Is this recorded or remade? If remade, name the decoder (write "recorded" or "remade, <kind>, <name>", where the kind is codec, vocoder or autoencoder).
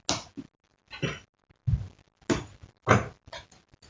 recorded